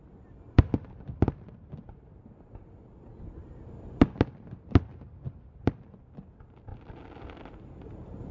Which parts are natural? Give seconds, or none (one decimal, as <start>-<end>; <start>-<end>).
0.0-8.3